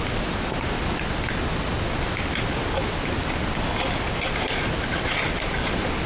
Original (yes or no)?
yes